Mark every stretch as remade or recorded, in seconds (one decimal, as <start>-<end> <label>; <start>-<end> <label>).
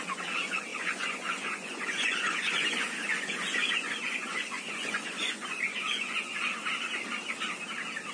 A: 0.0-6.3 remade; 6.3-8.1 recorded